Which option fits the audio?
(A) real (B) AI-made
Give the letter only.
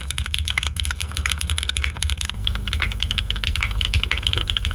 B